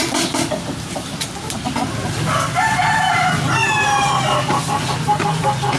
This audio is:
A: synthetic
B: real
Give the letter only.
B